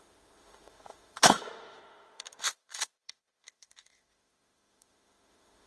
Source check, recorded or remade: remade